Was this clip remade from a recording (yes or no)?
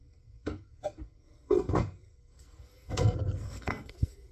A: yes